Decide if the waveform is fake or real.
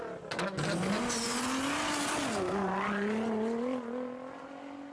real